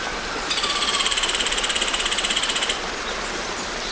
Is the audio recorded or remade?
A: remade